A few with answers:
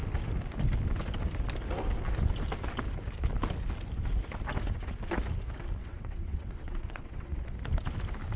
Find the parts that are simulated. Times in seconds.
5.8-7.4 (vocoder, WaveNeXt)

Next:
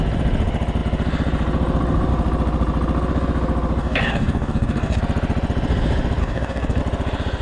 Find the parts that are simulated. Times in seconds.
3.8-5.0 (codec, DAC); 6.2-6.8

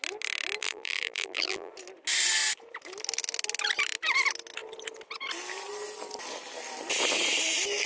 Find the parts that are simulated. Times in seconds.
0.6-1.7 (vocoder, BigVGAN v2)

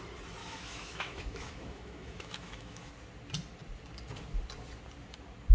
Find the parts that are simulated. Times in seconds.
0.4-2.9 (autoencoder, DAC-VAE)